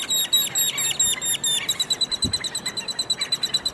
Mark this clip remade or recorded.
recorded